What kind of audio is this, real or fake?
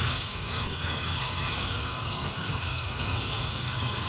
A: fake